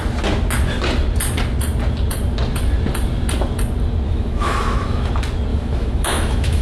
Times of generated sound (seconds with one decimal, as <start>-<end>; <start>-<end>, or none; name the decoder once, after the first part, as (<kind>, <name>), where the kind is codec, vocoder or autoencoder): 4.1-5.1 (autoencoder, DAC-VAE); 5.5-6.6